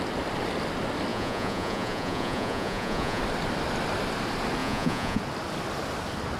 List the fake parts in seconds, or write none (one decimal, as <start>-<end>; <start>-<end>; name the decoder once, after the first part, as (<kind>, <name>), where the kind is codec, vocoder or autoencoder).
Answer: 1.1-3.2 (vocoder, Vocos); 4.6-5.2